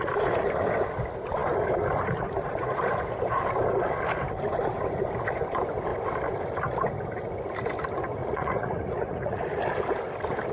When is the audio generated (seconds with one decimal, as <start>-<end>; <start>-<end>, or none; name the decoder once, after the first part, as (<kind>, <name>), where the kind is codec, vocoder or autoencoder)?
8.2-9.6 (vocoder, Vocos)